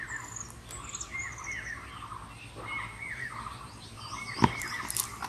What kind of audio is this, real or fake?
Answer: real